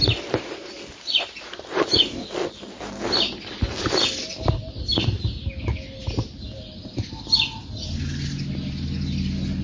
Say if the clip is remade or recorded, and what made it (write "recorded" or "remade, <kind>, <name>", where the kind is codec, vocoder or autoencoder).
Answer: recorded